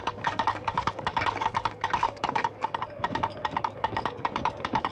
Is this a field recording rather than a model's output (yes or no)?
no